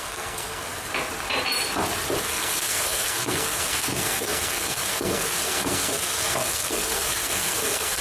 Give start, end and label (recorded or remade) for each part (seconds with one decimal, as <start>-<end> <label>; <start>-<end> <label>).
0.0-0.9 remade; 0.9-2.2 recorded; 2.2-8.0 remade